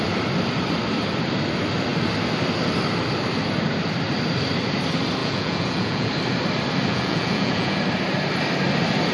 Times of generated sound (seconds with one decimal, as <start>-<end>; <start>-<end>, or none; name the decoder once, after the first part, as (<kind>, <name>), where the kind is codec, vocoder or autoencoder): 5.2-6.1 (vocoder, Vocos); 6.9-7.8